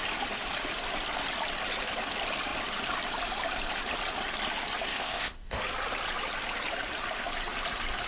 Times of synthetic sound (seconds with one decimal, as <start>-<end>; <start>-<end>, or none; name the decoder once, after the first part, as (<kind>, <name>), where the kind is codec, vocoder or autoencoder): 4.9-5.6 (codec, ZipCodec)